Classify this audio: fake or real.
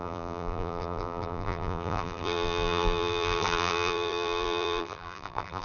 fake